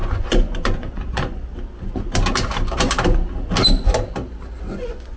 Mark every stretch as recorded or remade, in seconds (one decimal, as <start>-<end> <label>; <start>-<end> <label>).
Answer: 0.0-1.5 remade; 1.5-4.6 recorded; 4.6-5.2 remade